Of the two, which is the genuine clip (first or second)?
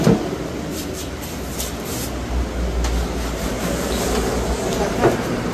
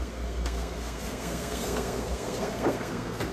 first